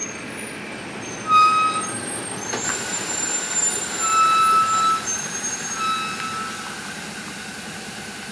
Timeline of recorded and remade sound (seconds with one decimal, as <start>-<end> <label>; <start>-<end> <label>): 0.0-8.3 recorded